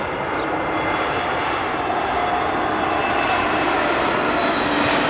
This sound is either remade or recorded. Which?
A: recorded